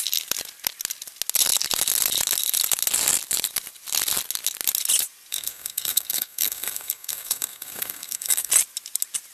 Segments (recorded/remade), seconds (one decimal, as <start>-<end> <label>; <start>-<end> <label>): 0.0-5.3 recorded; 5.3-8.5 remade; 8.5-9.3 recorded